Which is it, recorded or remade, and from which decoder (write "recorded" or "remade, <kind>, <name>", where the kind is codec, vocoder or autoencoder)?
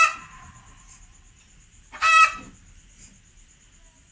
recorded